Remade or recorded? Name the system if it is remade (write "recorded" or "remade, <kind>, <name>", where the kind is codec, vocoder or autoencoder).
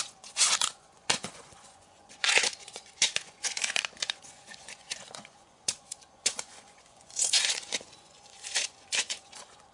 remade, vocoder, Vocos